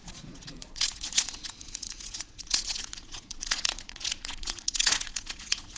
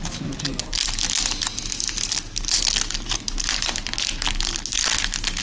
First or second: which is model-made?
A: first